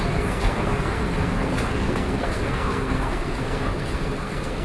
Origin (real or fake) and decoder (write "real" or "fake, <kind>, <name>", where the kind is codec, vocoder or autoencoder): fake, codec, SNAC